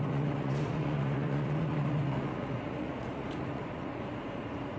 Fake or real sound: fake